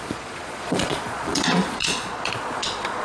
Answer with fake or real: fake